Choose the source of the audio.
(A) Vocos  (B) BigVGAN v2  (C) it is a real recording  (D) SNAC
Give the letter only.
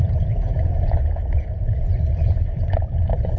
A